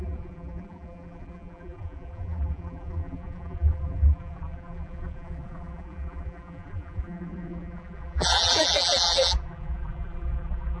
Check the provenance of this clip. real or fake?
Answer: fake